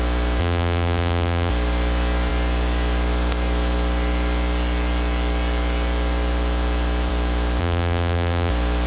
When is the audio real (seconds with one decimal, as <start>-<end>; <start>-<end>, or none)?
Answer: 0.0-0.4; 1.5-7.6; 8.5-8.9